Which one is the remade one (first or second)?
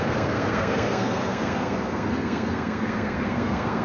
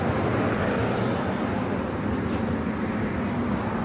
first